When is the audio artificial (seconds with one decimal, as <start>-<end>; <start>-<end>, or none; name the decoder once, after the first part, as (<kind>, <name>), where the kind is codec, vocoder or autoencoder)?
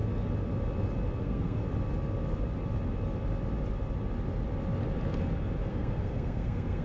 1.2-1.6 (codec, SNAC); 5.7-6.8